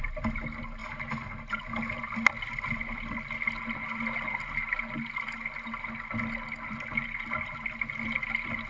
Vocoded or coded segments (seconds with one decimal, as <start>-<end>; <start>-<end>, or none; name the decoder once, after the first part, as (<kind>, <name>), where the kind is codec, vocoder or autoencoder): none